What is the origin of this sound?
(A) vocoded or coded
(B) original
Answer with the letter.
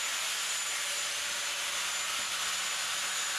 B